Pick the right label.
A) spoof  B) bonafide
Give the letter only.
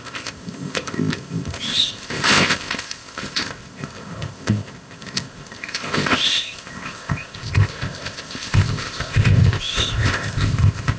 A